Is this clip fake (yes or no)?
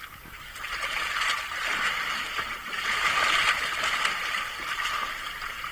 no